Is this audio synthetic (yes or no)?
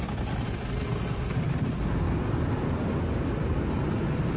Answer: no